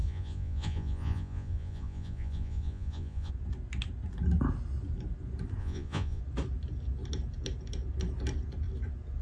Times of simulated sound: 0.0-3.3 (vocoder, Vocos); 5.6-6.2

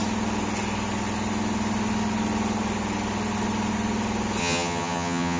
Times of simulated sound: 4.4-5.4 (vocoder, HiFi-GAN)

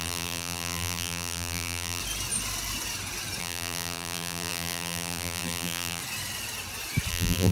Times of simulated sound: 0.0-2.0 (vocoder, BigVGAN v2); 3.4-6.0; 7.1-7.5